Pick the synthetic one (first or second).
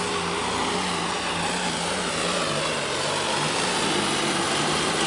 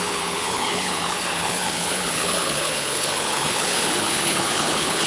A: second